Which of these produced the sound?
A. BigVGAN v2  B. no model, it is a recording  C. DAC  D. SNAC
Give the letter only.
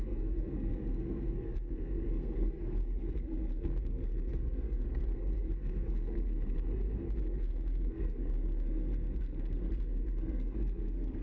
D